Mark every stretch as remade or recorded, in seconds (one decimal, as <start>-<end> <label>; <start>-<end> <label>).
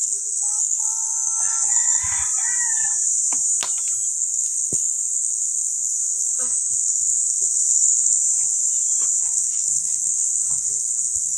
0.0-2.0 remade; 2.0-4.1 recorded; 4.1-8.2 remade; 8.2-9.2 recorded; 9.2-11.4 remade